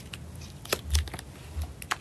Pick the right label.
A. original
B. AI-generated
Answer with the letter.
A